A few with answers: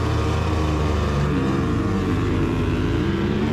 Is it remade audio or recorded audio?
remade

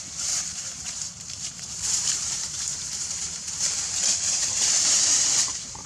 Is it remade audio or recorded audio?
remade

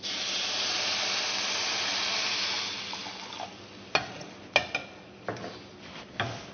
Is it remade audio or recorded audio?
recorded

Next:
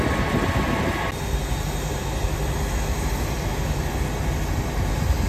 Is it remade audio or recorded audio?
recorded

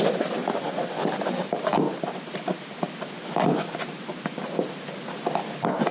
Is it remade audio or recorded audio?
remade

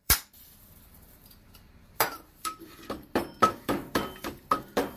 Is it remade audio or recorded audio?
remade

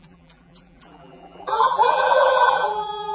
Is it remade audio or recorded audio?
remade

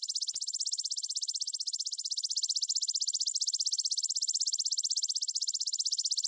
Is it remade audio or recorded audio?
recorded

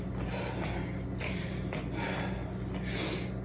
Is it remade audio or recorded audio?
recorded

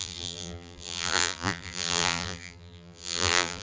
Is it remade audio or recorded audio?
remade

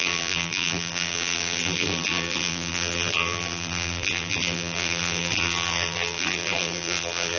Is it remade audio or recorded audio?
remade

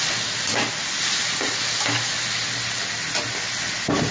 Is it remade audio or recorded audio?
recorded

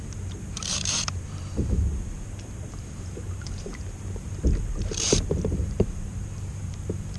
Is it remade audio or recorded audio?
remade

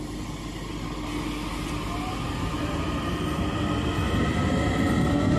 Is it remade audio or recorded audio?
recorded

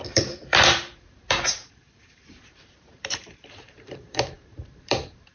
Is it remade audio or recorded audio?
remade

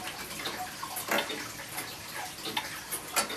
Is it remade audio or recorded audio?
recorded